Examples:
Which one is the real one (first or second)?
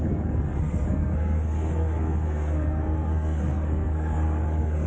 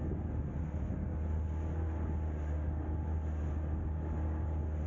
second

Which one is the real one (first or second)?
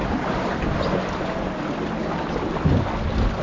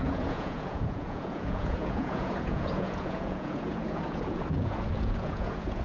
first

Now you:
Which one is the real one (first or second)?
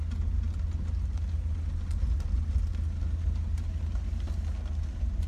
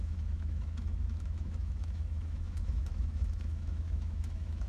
first